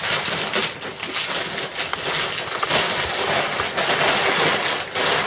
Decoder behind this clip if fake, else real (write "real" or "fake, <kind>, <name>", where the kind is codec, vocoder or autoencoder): real